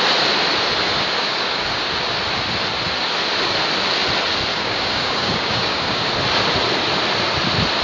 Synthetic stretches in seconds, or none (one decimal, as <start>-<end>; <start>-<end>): 0.9-1.9; 4.5-6.1